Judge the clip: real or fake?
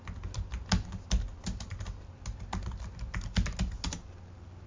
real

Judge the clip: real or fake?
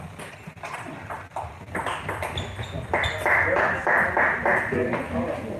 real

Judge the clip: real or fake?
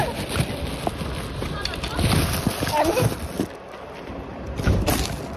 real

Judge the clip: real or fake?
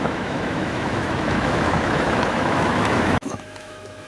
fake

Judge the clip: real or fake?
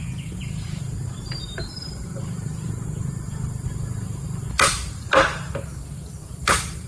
fake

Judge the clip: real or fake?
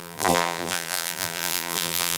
fake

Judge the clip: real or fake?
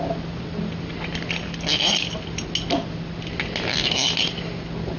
real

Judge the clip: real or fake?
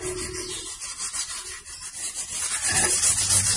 real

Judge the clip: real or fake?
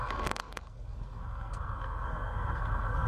fake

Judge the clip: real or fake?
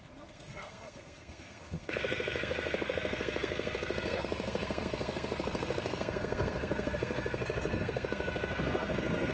fake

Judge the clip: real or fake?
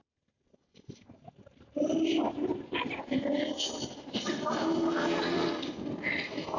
real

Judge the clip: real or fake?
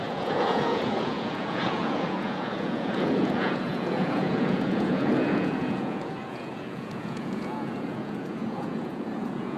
fake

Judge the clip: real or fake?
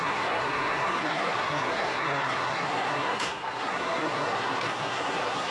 fake